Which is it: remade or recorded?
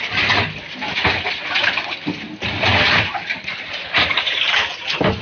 recorded